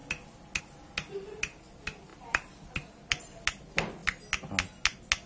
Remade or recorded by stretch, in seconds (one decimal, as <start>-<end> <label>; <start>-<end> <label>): 0.0-5.3 recorded